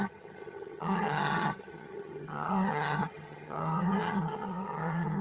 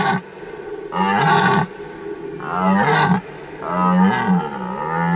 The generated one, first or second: first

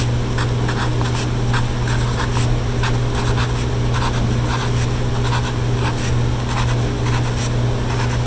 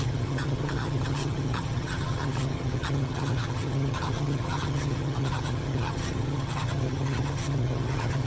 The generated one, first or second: second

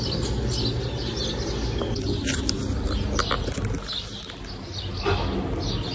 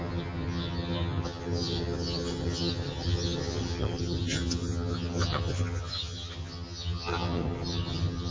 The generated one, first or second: second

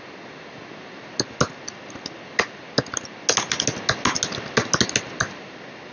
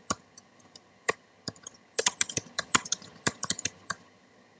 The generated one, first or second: second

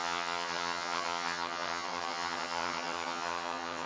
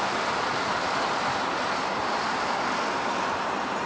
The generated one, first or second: first